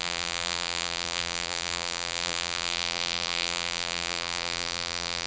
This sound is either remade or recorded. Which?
remade